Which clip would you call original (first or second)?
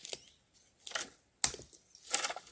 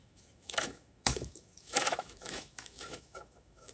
first